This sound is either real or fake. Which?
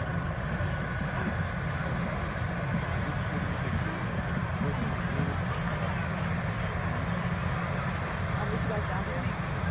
real